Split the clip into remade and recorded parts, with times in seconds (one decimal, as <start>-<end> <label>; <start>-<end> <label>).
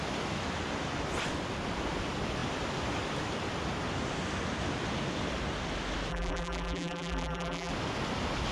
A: 0.0-6.1 recorded; 6.1-7.7 remade; 7.7-8.5 recorded